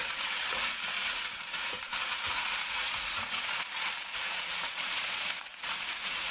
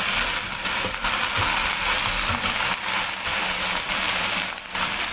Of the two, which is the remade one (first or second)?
first